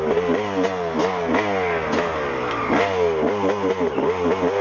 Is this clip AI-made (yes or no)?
no